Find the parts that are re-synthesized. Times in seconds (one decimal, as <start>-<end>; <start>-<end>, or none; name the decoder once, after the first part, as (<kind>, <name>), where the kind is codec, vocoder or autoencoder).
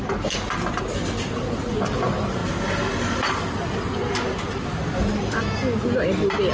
none